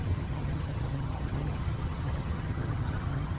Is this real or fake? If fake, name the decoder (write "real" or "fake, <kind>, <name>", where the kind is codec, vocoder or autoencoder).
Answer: fake, vocoder, HiFi-GAN